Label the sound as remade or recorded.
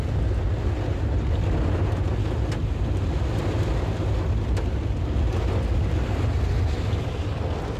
recorded